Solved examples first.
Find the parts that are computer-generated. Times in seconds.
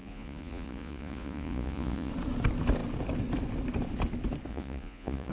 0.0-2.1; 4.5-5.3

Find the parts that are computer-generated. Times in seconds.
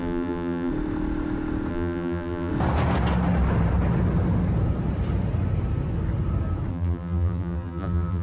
0.0-0.7; 1.7-2.5; 6.7-8.2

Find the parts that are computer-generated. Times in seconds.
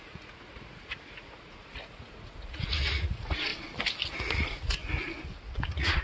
0.0-3.5; 4.2-4.8; 5.5-6.0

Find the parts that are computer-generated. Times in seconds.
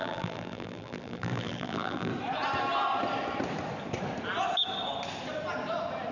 0.0-2.1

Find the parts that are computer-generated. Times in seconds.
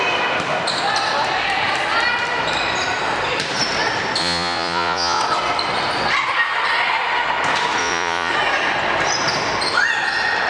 4.2-5.2; 7.8-8.3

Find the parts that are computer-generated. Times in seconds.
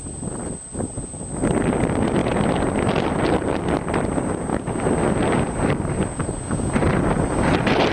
none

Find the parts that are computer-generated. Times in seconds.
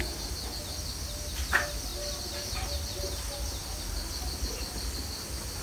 none